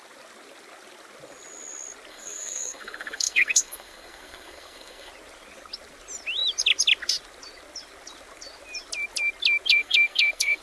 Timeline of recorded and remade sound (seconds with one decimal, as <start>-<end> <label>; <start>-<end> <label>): 0.0-2.1 recorded; 2.1-5.1 remade; 5.1-9.7 recorded; 9.7-10.6 remade